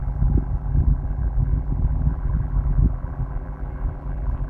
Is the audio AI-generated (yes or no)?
yes